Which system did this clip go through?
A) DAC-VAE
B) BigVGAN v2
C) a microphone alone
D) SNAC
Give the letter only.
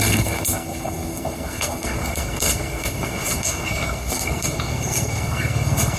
D